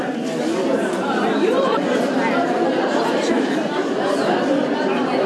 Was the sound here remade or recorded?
recorded